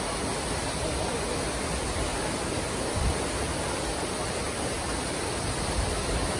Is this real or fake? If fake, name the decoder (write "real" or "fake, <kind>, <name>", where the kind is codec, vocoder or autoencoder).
real